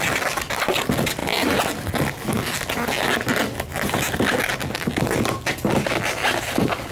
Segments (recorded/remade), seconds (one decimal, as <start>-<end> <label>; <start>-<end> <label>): 0.0-6.9 recorded